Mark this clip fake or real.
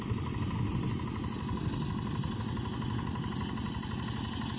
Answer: real